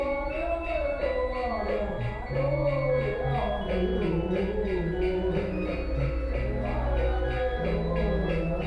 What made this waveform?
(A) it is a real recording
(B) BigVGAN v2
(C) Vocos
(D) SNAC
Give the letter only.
A